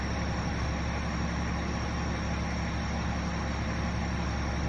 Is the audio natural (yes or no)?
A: yes